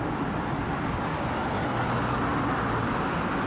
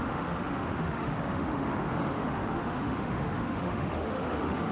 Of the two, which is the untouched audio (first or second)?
first